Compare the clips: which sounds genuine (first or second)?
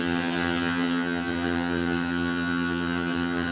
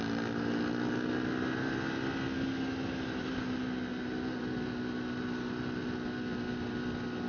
second